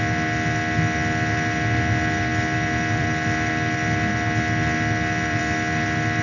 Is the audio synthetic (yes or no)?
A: yes